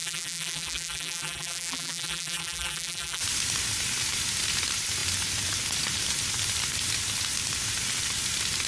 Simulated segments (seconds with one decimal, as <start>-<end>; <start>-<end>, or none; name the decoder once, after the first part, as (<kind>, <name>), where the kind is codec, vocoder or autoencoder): 0.0-3.2 (vocoder, BigVGAN v2)

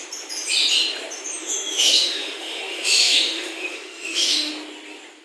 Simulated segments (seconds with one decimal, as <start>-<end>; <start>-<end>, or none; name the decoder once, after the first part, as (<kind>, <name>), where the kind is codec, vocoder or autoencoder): 1.4-4.5 (autoencoder, DAC-VAE)

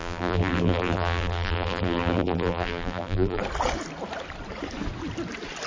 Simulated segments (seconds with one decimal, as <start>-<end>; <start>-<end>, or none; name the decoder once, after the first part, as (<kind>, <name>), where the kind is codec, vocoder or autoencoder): 0.0-3.4 (vocoder, BigVGAN v2)